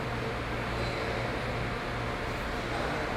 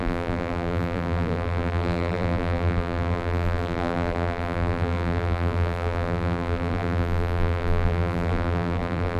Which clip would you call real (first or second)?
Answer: first